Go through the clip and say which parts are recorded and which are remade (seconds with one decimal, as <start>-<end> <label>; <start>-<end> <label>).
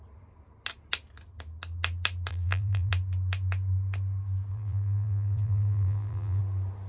0.0-2.3 recorded; 2.3-2.9 remade; 2.9-4.5 recorded; 4.5-6.4 remade; 6.4-6.9 recorded